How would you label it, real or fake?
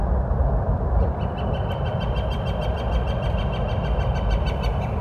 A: real